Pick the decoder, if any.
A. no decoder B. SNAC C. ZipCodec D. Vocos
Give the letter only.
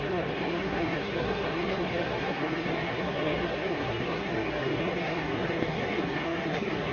B